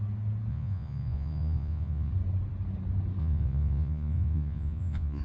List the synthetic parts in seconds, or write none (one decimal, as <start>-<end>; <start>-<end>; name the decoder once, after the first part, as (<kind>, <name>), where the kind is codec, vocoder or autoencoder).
0.5-2.1 (vocoder, Vocos); 3.2-5.2

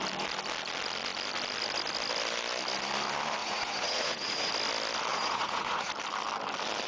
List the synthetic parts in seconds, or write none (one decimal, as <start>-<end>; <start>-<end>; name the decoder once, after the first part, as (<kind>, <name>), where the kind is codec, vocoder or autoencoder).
3.4-4.5 (vocoder, Vocos); 5.1-5.9

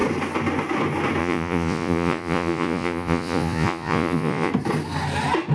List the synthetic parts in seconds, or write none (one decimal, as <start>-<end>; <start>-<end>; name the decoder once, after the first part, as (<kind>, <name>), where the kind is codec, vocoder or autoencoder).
1.2-4.5 (vocoder, Vocos)

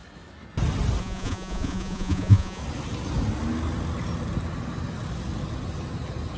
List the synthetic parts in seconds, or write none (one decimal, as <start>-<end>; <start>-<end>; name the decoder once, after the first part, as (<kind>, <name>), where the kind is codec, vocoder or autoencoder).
1.0-2.6 (vocoder, Vocos)

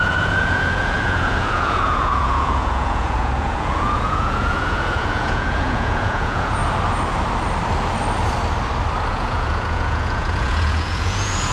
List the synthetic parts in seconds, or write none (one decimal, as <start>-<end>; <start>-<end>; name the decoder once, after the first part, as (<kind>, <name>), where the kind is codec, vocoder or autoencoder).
0.0-6.6 (vocoder, Vocos); 9.1-11.5

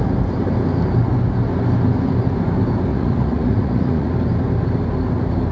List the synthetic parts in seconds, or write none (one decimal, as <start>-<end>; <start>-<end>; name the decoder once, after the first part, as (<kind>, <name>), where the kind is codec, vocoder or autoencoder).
2.9-4.1 (vocoder, Vocos)